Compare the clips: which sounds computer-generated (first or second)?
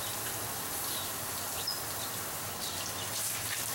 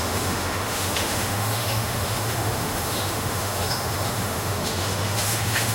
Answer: second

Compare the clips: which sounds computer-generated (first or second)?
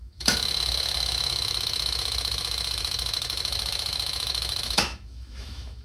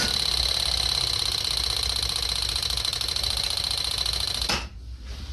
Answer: first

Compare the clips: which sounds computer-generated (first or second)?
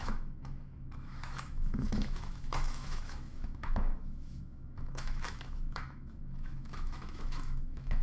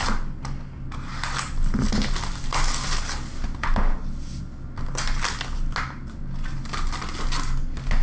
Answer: first